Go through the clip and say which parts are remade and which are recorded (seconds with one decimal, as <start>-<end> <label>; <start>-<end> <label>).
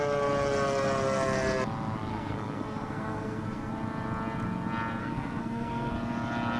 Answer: 0.0-2.1 recorded; 2.1-3.7 remade; 3.7-5.0 recorded; 5.0-5.9 remade; 5.9-6.6 recorded